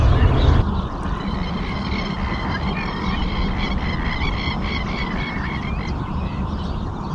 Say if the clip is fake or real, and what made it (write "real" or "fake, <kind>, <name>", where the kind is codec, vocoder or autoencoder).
real